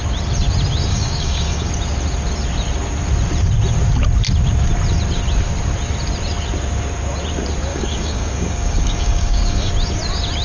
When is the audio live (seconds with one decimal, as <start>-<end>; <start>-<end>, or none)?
0.0-0.9; 1.7-7.7; 9.7-10.4